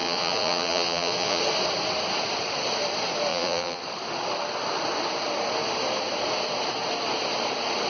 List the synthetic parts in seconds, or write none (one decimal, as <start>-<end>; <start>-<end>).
0.0-1.4; 3.3-3.8